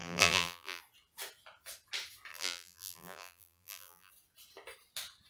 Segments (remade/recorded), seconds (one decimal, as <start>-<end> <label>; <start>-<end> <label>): 0.0-0.8 remade; 0.8-2.3 recorded; 2.3-4.1 remade; 4.1-5.3 recorded